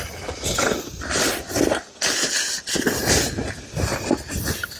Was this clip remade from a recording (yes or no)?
no